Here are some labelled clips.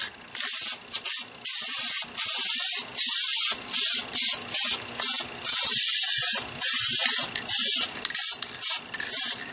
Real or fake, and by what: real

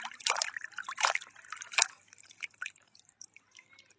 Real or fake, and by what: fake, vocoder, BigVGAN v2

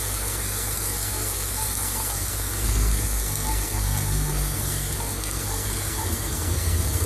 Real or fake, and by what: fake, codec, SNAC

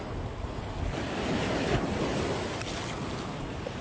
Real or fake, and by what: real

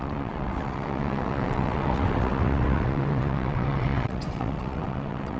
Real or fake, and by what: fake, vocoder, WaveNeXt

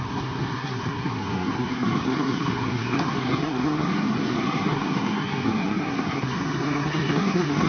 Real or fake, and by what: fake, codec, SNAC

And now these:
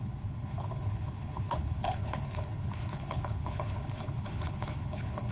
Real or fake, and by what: fake, codec, HILCodec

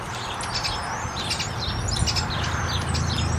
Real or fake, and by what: real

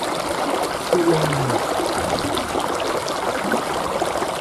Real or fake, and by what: real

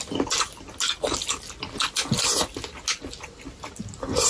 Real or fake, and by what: real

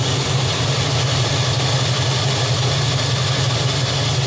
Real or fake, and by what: real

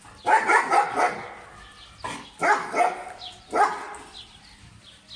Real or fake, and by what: real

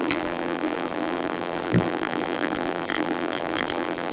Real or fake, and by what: fake, vocoder, BigVGAN v2